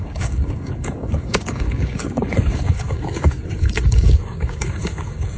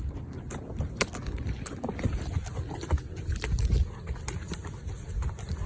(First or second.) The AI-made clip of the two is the first